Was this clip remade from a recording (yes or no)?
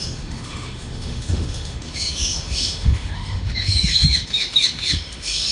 yes